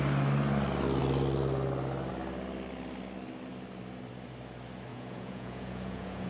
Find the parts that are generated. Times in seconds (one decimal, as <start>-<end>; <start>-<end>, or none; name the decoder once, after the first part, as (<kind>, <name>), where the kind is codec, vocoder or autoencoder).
4.9-6.3 (vocoder, Vocos)